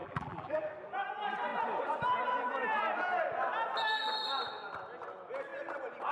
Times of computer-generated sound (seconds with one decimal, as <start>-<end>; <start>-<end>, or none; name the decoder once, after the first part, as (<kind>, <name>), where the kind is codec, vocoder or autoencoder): 0.0-0.6 (vocoder, BigVGAN v2)